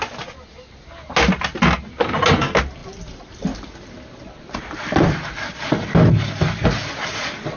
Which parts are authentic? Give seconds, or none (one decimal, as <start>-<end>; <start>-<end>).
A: 0.0-7.6